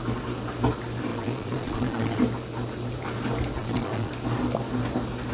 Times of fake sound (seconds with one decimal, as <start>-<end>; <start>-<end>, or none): 1.1-2.2; 3.6-4.1